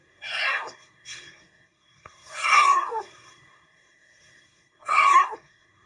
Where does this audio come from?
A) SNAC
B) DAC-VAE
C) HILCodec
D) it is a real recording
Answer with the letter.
A